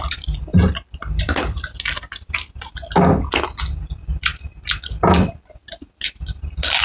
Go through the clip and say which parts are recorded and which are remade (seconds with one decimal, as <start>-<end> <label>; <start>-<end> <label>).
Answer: 0.0-6.8 recorded

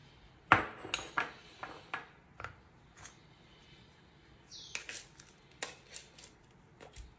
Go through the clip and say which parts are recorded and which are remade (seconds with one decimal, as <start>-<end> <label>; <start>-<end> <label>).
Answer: 0.0-7.2 recorded

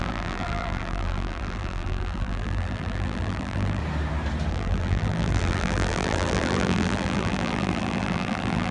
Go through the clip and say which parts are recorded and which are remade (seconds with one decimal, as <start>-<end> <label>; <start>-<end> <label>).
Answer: 0.0-3.8 remade; 3.8-4.5 recorded; 4.5-8.7 remade

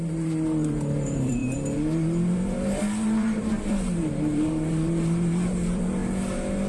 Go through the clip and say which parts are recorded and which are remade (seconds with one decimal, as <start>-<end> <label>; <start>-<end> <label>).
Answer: 0.0-6.0 remade; 6.0-6.7 recorded

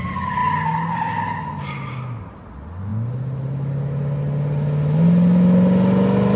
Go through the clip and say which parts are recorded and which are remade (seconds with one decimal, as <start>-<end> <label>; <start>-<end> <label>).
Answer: 0.0-6.4 recorded